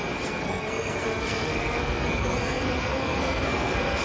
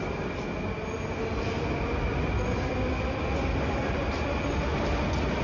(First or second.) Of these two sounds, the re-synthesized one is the first